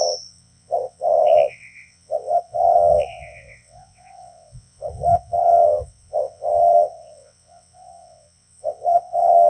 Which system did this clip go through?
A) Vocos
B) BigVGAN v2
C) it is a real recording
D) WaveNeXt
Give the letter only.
D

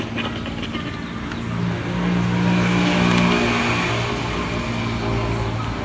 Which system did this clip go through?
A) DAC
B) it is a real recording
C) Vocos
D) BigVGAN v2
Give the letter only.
B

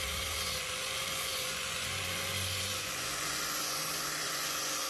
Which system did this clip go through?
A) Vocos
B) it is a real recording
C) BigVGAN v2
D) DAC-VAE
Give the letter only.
A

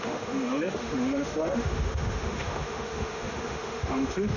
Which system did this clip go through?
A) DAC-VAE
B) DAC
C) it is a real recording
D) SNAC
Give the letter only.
A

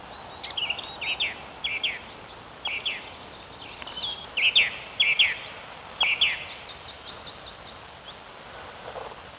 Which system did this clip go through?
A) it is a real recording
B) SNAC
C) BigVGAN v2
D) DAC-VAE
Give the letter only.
A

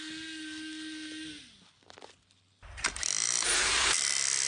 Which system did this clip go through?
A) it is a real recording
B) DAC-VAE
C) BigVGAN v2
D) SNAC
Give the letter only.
A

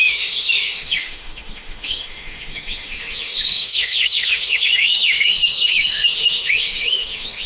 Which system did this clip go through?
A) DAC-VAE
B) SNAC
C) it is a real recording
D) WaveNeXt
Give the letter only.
A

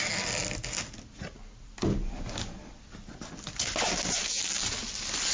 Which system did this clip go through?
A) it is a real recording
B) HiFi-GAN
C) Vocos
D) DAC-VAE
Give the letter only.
A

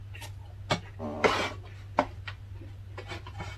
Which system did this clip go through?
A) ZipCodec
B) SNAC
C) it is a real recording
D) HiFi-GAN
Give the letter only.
C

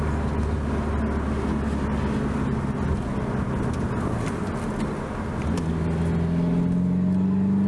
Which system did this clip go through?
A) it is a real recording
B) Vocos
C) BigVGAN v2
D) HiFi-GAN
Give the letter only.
A